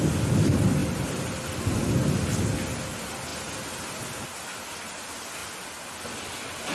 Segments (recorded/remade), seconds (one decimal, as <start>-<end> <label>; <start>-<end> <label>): 0.0-0.8 recorded; 0.8-1.9 remade; 1.9-5.4 recorded; 5.4-6.2 remade; 6.2-6.7 recorded